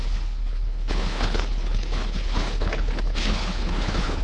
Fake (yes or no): yes